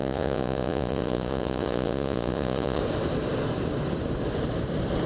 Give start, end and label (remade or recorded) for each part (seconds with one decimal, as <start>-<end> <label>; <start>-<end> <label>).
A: 0.0-2.8 remade; 2.8-5.1 recorded